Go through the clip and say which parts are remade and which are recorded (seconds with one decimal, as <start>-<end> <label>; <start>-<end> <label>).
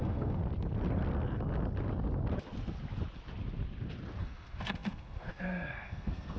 0.0-0.4 remade; 0.4-4.2 recorded; 4.2-6.4 remade